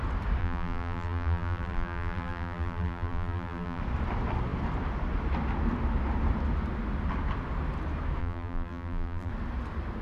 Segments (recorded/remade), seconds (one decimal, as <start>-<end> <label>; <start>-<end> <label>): 0.0-0.4 recorded; 0.4-3.8 remade; 3.8-8.2 recorded; 8.2-9.3 remade; 9.3-10.0 recorded